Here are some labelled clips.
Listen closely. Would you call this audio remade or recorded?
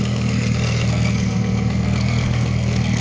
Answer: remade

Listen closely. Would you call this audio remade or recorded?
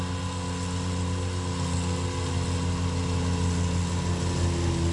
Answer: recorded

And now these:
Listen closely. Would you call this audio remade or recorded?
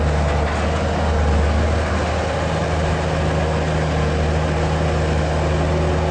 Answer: recorded